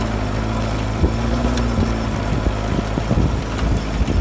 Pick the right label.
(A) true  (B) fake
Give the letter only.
A